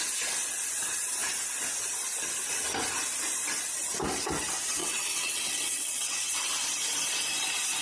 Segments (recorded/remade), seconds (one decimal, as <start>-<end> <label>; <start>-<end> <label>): 0.0-4.8 recorded; 4.8-6.3 remade; 6.3-7.8 recorded